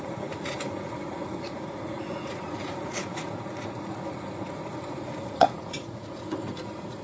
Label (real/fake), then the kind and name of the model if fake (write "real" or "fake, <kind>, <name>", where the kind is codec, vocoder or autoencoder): fake, vocoder, Vocos